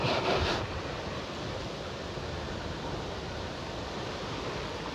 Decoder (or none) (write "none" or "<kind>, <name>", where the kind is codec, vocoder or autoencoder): none